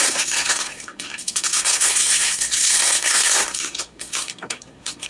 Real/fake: fake